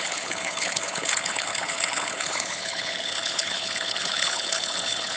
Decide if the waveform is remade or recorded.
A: remade